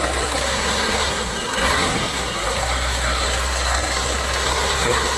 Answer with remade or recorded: remade